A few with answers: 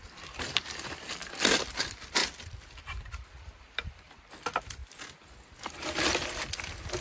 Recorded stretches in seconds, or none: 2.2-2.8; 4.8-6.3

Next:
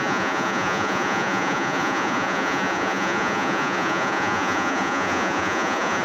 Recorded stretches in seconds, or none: none

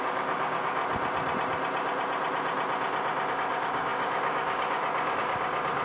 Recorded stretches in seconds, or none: 0.8-3.3